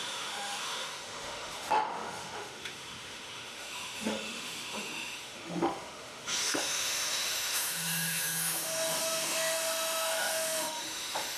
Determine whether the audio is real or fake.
fake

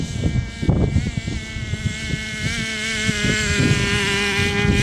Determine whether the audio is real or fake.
real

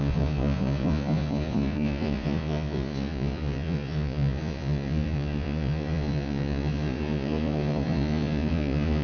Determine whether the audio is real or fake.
fake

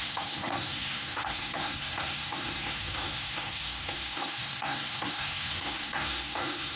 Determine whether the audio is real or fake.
fake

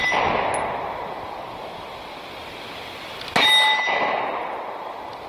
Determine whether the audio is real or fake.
real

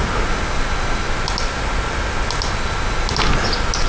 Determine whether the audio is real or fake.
real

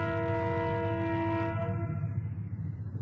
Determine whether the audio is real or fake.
real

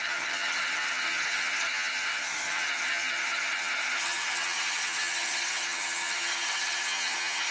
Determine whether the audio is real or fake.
fake